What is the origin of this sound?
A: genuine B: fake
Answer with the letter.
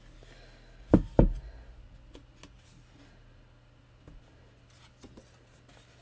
A